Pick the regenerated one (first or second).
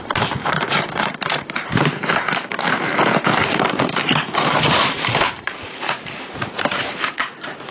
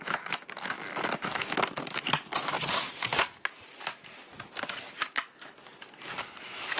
first